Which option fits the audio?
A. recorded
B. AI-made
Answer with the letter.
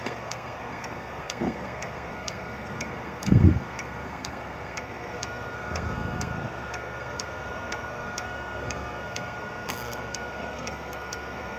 B